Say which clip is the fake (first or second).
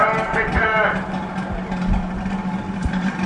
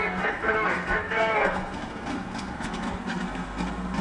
second